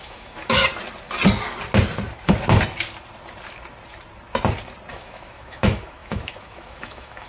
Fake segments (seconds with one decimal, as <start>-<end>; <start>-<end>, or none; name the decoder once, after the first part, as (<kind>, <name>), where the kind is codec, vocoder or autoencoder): 0.0-0.6 (autoencoder, DAC-VAE); 4.9-7.3